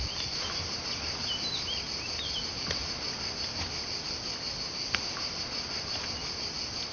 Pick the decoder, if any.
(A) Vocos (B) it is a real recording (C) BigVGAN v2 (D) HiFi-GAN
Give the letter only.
B